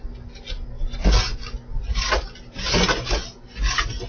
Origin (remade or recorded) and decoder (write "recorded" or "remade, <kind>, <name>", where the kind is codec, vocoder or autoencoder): recorded